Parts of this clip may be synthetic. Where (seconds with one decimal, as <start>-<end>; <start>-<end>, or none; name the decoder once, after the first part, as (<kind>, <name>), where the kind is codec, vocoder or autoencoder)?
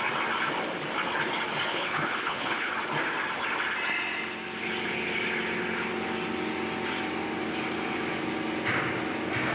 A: 1.7-2.7 (codec, HILCodec)